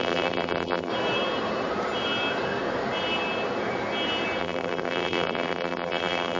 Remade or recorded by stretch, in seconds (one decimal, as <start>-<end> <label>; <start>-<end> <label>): 0.0-0.9 remade; 0.9-4.4 recorded; 4.4-6.4 remade